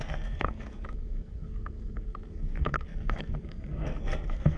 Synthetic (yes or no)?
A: yes